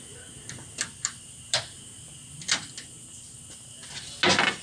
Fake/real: real